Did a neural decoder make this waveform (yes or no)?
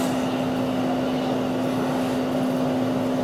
no